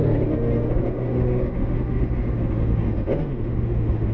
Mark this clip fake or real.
fake